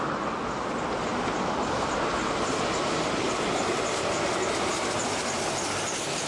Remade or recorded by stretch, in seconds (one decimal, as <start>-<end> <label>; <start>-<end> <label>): 0.0-6.3 recorded